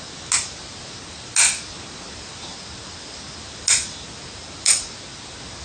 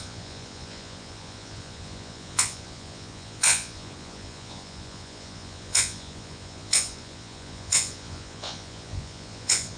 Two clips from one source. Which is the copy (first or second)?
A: second